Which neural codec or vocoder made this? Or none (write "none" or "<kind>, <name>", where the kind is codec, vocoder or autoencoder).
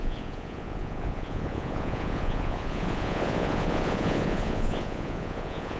vocoder, Vocos